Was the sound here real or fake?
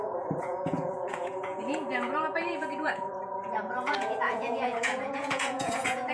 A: fake